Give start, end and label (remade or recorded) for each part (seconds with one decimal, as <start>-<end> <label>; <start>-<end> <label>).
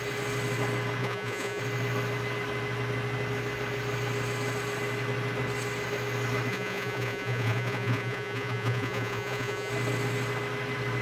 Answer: 0.0-1.0 recorded; 1.0-1.6 remade; 1.6-6.5 recorded; 6.5-9.7 remade; 9.7-11.0 recorded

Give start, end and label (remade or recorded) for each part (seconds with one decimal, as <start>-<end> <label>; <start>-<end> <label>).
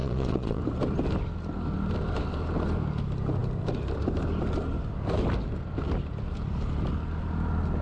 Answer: 0.0-0.6 remade; 0.6-7.8 recorded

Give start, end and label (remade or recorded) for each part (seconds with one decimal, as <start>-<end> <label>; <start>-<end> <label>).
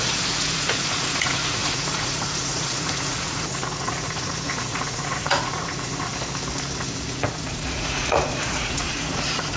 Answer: 0.0-6.1 remade; 6.1-6.8 recorded; 6.8-9.6 remade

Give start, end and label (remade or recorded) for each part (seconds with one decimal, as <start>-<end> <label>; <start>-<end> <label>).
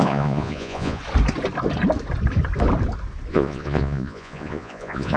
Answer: 0.0-1.0 remade; 1.0-3.3 recorded; 3.3-5.2 remade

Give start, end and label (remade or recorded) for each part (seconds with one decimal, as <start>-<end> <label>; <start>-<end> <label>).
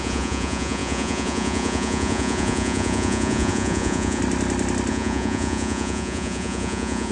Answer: 0.0-4.2 remade; 4.2-4.9 recorded; 4.9-7.1 remade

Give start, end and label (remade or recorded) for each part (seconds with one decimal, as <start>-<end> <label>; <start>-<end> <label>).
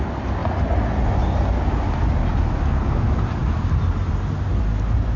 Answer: 0.0-5.2 recorded